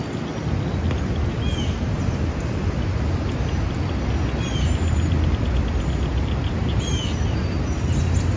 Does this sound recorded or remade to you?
recorded